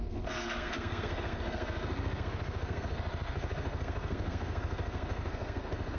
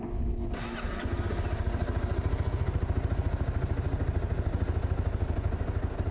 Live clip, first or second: second